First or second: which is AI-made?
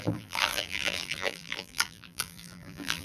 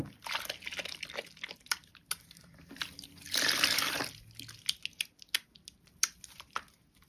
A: first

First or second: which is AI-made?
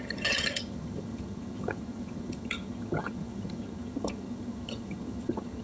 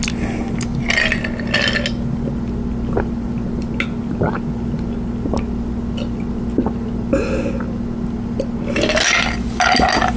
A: first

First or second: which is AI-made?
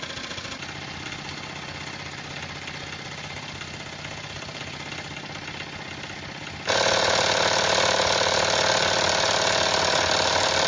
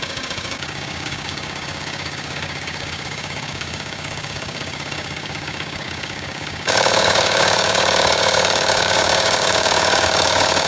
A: second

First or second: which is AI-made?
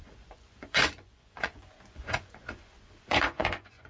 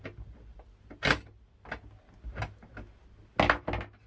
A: first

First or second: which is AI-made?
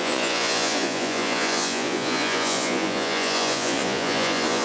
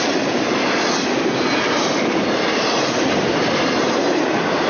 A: first